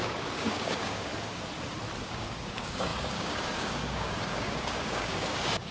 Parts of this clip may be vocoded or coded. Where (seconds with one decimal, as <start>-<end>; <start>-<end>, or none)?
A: 0.0-1.1; 2.0-5.7